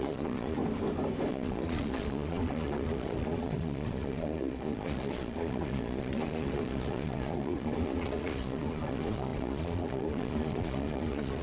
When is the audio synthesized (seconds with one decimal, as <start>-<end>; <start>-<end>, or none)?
0.0-0.6; 1.3-11.4